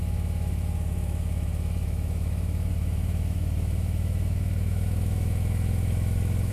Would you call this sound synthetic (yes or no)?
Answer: yes